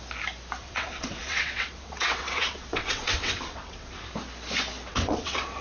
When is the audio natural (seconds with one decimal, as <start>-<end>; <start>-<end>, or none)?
0.0-0.6; 4.0-4.9